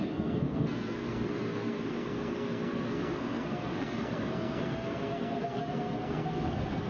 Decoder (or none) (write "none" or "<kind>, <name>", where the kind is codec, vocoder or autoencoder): codec, SNAC